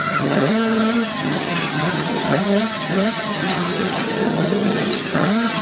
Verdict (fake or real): fake